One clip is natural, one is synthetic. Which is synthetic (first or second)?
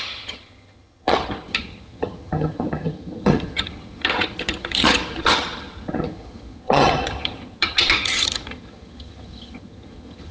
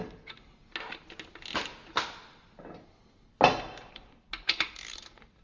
first